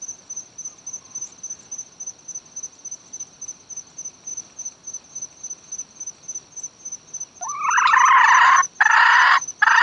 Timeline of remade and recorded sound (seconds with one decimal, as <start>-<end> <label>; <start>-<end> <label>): 0.0-9.8 recorded